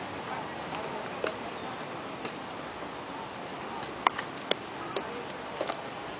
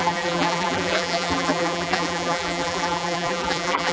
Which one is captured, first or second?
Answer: first